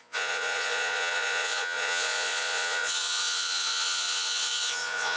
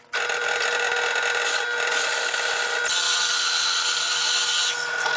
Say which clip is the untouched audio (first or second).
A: second